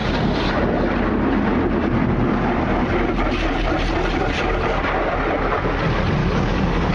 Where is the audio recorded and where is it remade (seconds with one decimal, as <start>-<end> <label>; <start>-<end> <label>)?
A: 0.0-6.2 recorded; 6.2-6.9 remade